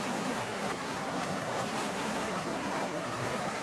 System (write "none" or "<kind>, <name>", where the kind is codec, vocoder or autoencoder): codec, SNAC